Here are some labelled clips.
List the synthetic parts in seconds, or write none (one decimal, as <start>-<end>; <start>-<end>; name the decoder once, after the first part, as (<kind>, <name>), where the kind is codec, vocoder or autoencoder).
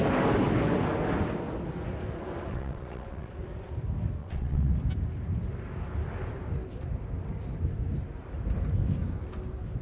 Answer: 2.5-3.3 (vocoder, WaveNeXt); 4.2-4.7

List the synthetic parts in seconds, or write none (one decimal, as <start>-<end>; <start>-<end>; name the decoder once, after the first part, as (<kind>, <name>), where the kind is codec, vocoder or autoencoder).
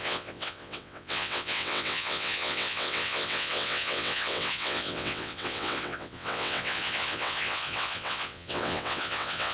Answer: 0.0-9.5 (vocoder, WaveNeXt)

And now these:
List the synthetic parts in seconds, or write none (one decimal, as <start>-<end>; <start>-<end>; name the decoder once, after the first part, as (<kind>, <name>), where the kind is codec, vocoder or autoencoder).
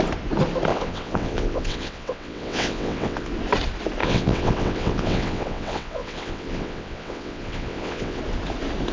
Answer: 0.7-3.3 (vocoder, WaveNeXt); 4.0-8.2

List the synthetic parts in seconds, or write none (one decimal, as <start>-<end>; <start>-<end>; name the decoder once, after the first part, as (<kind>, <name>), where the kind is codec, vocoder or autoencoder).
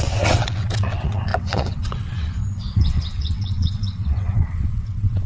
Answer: 0.0-5.3 (vocoder, WaveNeXt)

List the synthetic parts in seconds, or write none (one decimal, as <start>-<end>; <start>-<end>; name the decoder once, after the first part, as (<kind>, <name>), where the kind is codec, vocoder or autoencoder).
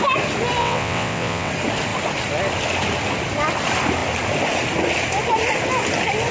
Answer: 0.6-1.5 (vocoder, WaveNeXt)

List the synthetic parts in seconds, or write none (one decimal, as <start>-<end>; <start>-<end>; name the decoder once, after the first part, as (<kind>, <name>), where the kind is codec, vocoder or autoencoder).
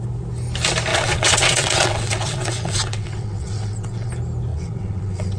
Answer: 0.9-4.1 (vocoder, WaveNeXt); 4.5-5.4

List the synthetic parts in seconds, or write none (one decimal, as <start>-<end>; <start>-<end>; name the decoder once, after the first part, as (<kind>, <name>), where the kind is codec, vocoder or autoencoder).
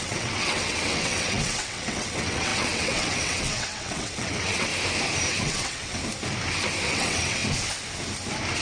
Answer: 0.0-4.7 (vocoder, WaveNeXt); 5.3-6.0; 6.9-7.4